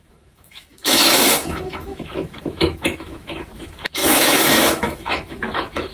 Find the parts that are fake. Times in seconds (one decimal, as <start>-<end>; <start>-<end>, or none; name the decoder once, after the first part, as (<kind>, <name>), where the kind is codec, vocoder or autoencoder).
0.0-5.9 (autoencoder, DAC-VAE)